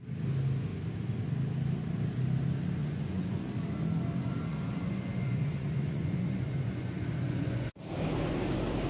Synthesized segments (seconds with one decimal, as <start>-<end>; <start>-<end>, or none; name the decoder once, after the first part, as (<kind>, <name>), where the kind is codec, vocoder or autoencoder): 2.8-3.5 (vocoder, Vocos); 4.5-7.7